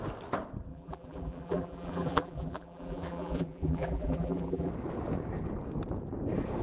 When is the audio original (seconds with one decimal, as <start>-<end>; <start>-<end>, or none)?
0.0-0.7; 4.7-6.6